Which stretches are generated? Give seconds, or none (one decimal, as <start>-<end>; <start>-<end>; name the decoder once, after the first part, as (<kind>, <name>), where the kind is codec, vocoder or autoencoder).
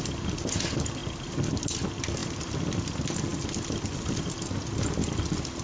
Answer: 1.0-1.6 (vocoder, BigVGAN v2); 2.2-2.7